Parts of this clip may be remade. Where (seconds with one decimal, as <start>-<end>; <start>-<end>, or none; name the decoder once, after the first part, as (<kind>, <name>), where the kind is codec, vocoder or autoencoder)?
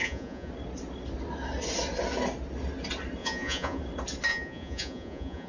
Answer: 0.0-0.5 (vocoder, Vocos); 3.2-3.8; 4.3-5.5